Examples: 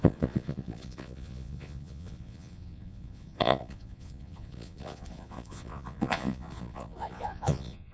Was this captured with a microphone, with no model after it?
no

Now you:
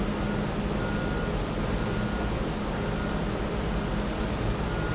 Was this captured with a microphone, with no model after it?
yes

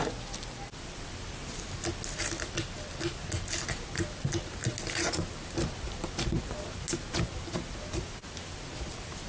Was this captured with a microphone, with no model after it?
yes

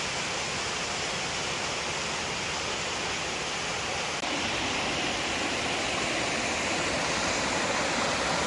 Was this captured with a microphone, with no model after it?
yes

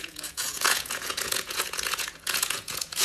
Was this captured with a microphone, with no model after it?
no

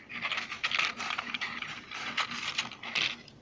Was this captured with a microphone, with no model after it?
yes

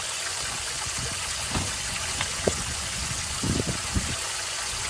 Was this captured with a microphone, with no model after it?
no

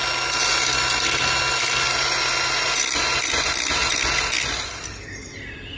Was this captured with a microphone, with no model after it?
yes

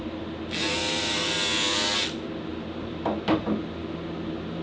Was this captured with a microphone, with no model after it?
yes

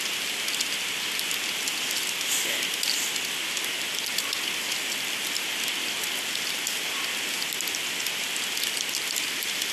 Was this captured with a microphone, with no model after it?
yes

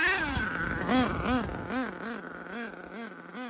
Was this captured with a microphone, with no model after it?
yes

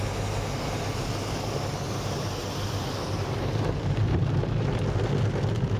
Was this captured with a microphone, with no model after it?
yes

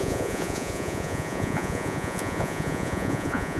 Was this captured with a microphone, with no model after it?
no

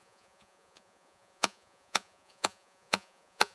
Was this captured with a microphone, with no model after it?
no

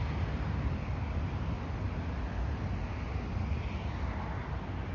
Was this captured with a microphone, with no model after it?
yes